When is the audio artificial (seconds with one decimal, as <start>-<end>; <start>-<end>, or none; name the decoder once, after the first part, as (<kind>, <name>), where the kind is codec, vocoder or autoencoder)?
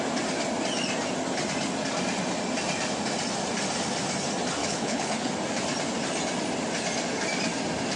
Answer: 4.6-5.3 (codec, HILCodec)